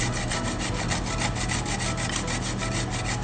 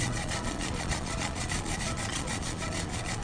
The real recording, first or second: first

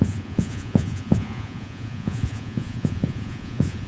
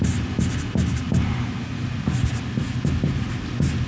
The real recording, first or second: second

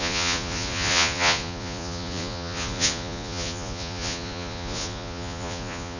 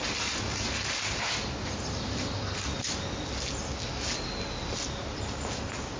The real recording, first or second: second